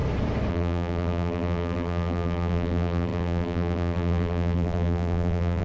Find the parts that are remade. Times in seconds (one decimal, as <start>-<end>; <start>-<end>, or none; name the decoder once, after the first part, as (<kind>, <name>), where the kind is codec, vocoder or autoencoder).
0.5-5.6 (vocoder, BigVGAN v2)